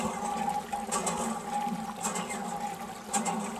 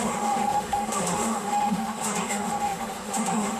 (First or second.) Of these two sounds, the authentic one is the first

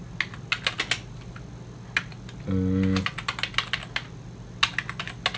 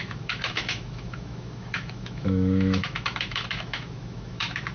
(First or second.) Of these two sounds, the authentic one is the first